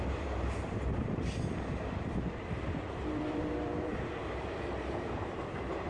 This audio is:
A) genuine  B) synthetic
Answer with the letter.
B